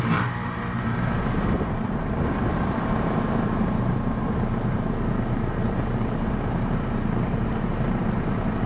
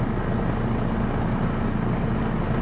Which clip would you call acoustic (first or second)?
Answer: second